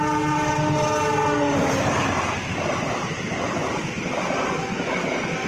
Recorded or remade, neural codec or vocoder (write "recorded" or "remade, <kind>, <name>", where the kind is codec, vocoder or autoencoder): recorded